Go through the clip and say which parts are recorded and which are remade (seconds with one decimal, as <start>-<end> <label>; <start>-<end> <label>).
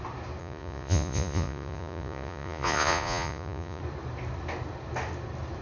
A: 0.0-0.4 recorded; 0.4-3.8 remade; 3.8-5.6 recorded